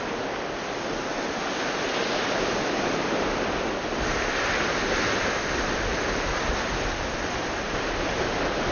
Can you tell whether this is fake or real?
real